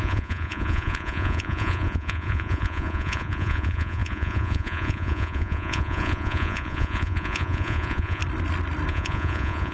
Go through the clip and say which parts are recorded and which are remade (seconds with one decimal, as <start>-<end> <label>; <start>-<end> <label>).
0.0-8.2 remade; 8.2-8.9 recorded; 8.9-9.7 remade